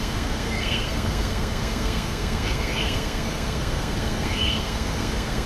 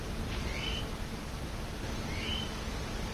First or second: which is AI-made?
first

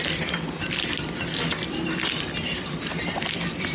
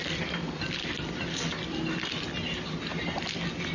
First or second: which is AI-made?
first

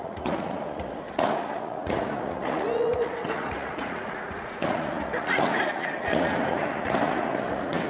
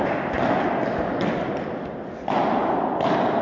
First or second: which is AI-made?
first